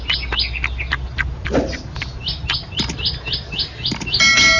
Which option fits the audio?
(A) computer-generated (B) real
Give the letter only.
B